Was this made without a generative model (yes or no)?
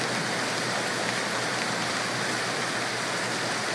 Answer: yes